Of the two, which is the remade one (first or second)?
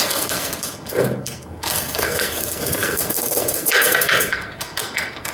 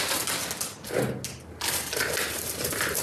first